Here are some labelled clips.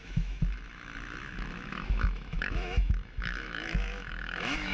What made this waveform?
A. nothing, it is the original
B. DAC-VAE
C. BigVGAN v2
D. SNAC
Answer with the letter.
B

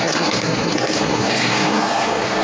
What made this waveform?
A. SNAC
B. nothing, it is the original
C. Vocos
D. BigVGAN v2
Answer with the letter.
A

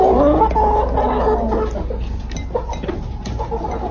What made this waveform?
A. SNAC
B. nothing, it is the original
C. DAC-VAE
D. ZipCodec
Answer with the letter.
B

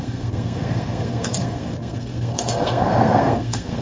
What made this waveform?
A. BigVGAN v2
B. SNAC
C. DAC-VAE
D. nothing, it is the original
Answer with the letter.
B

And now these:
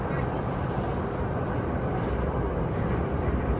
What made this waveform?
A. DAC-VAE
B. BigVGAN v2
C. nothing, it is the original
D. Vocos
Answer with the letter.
B